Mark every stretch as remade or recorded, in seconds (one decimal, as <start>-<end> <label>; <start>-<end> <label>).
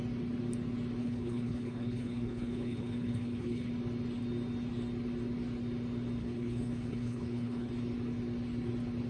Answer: 0.0-1.0 recorded; 1.0-3.7 remade; 3.7-6.2 recorded; 6.2-7.7 remade; 7.7-9.1 recorded